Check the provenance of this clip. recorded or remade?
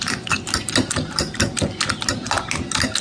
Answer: recorded